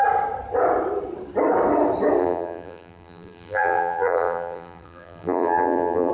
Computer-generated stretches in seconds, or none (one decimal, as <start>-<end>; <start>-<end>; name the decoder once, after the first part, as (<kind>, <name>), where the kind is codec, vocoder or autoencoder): 2.2-6.1 (vocoder, BigVGAN v2)